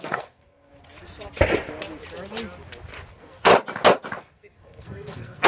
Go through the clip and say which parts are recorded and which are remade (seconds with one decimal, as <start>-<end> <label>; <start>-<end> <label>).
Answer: 0.0-0.7 remade; 0.7-3.1 recorded; 3.1-3.5 remade; 3.5-4.2 recorded; 4.2-5.5 remade